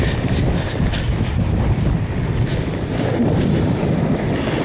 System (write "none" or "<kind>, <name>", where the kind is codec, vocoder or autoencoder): none